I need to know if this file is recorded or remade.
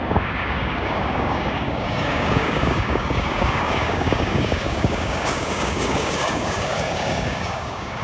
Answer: remade